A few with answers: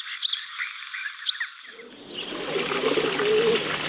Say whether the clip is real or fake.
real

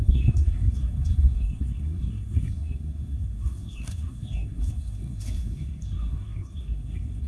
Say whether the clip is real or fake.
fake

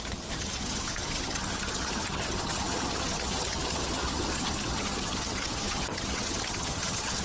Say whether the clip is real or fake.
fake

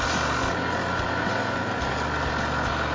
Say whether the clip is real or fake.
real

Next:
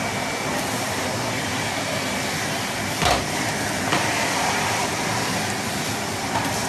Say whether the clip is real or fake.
fake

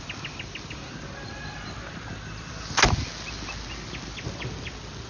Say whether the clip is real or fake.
real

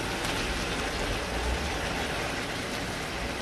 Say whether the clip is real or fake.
real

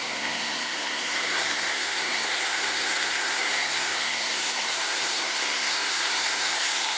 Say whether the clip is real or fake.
fake